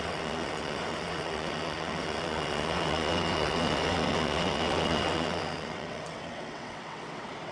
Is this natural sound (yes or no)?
no